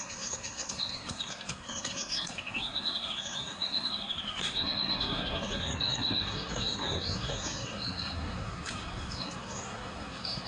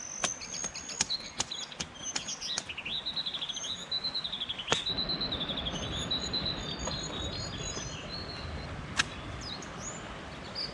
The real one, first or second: second